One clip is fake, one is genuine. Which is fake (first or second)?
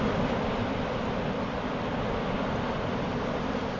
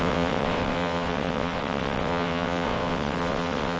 second